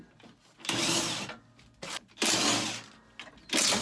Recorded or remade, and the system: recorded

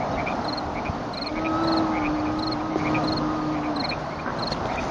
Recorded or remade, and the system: recorded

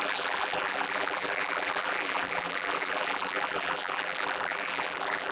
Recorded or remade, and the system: remade, vocoder, BigVGAN v2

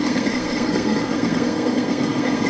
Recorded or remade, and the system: remade, codec, SNAC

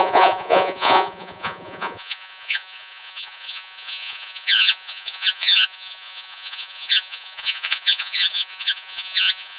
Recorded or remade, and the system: remade, vocoder, Vocos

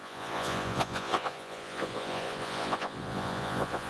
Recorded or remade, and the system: remade, vocoder, Vocos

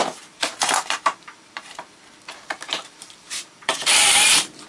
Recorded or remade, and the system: remade, vocoder, BigVGAN v2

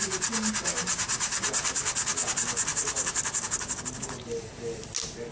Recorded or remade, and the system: recorded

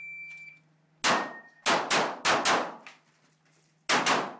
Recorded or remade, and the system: recorded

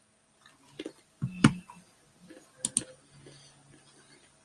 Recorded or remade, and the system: recorded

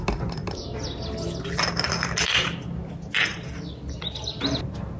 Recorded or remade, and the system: recorded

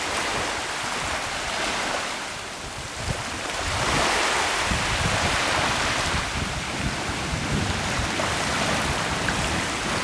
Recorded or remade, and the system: recorded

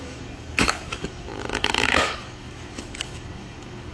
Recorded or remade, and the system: remade, codec, DAC